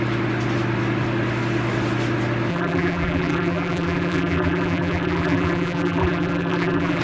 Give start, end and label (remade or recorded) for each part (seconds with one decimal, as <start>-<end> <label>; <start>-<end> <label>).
0.0-2.5 recorded; 2.5-7.0 remade